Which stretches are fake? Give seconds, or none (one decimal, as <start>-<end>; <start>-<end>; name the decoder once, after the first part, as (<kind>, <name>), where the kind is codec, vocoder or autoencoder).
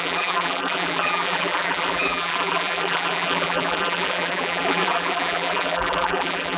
0.0-6.6 (vocoder, BigVGAN v2)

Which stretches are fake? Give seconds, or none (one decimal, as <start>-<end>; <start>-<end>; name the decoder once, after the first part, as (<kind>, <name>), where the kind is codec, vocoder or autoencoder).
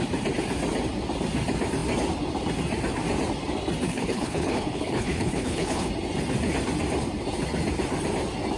3.9-5.9 (codec, HILCodec)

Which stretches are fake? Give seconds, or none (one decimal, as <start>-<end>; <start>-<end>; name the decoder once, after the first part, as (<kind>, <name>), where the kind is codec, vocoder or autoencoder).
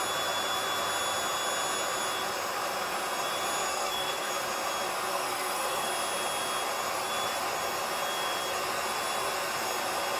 3.7-4.3 (codec, SNAC); 5.1-5.9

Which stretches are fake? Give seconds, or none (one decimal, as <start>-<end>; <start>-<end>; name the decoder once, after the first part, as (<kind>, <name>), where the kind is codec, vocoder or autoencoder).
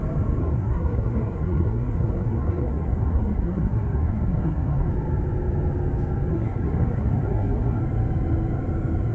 0.4-4.9 (codec, SNAC); 6.3-7.8